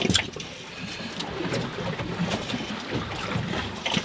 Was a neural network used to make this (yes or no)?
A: no